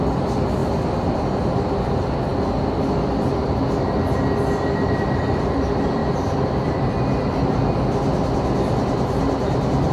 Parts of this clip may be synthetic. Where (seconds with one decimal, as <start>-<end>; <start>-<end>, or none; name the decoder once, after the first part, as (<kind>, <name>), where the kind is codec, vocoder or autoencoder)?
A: 0.6-1.4 (vocoder, BigVGAN v2)